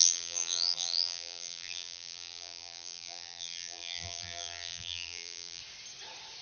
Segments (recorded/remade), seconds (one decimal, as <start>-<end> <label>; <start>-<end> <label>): 0.0-5.6 remade; 5.6-6.4 recorded